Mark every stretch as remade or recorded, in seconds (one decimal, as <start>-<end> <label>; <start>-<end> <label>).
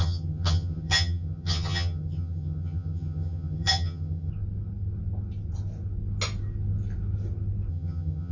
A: 0.0-4.3 remade; 4.3-7.7 recorded; 7.7-8.3 remade